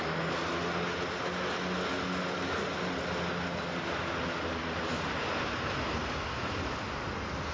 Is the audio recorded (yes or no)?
yes